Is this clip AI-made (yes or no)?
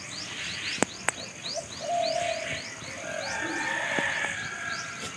no